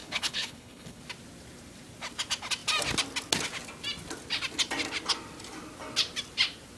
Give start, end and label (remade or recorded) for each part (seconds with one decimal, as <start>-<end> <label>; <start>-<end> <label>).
0.0-1.0 remade; 1.0-6.8 recorded